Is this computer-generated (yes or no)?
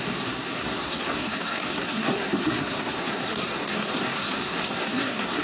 yes